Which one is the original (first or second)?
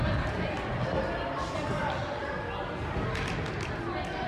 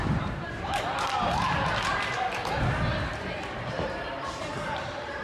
first